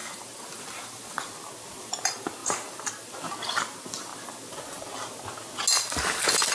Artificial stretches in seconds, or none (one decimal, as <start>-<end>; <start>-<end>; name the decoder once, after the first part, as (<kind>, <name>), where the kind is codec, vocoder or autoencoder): 0.0-1.2 (vocoder, BigVGAN v2); 2.4-2.9